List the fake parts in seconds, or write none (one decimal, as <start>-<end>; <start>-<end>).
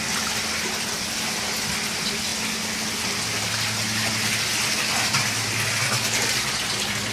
none